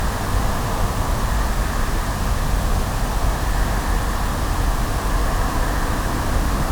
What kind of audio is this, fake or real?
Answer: real